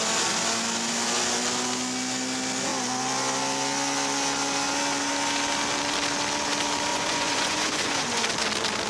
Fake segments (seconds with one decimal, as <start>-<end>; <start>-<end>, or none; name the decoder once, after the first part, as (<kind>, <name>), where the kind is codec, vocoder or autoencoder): 6.9-8.2 (vocoder, Vocos)